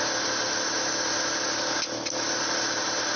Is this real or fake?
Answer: real